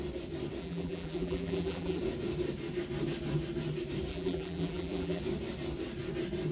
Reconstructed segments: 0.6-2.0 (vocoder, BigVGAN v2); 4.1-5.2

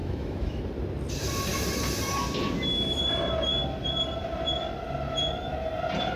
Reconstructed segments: 0.0-0.6 (autoencoder, DAC-VAE)

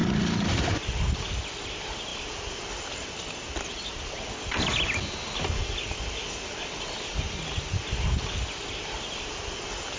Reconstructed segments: none

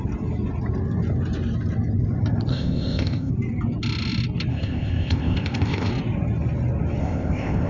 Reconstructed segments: 2.5-3.3 (codec, ZipCodec); 4.5-5.9; 7.0-7.7

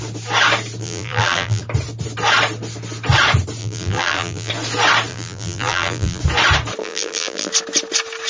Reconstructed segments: 0.8-1.6 (vocoder, BigVGAN v2); 3.6-4.5; 5.1-6.2; 6.8-7.5